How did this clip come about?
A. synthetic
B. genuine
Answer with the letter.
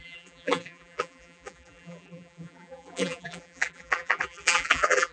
A